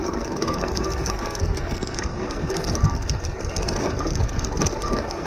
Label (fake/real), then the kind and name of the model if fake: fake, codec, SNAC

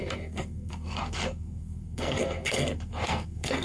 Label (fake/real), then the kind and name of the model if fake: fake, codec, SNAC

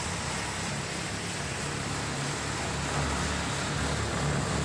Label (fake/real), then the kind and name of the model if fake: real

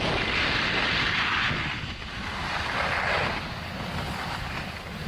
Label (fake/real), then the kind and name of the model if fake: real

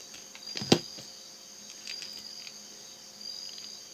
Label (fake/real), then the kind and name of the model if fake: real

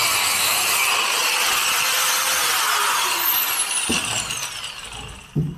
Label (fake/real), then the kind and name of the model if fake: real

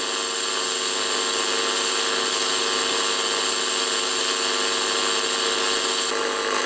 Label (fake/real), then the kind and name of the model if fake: real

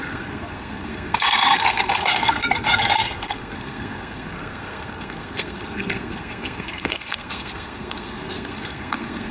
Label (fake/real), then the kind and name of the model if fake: fake, codec, SNAC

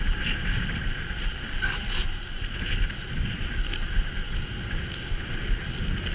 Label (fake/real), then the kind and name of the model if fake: real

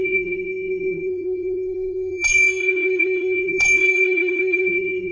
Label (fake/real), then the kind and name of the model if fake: fake, codec, SNAC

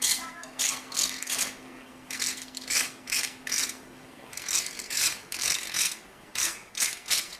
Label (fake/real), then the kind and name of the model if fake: fake, codec, SNAC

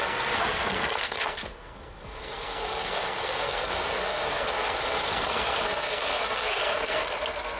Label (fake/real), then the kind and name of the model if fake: fake, codec, SNAC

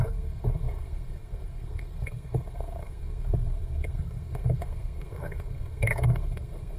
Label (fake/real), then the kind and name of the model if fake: fake, codec, SNAC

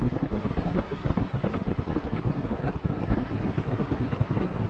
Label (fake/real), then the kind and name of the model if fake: fake, codec, SNAC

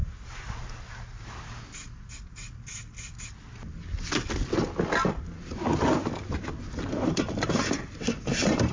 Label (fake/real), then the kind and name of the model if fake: real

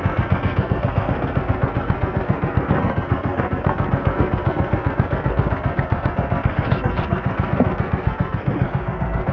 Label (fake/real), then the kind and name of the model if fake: fake, codec, SNAC